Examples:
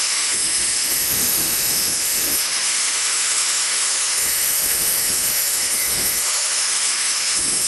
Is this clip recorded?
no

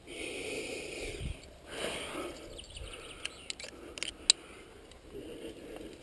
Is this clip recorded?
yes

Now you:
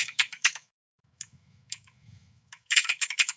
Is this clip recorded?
no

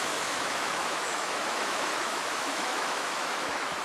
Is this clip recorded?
no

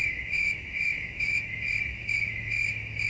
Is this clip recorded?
no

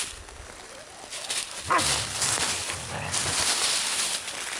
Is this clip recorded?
yes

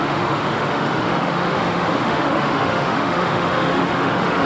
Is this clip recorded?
no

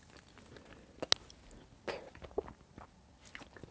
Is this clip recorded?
yes